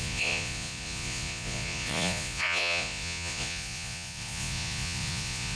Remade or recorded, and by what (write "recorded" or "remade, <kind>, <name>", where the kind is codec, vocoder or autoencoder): remade, vocoder, Vocos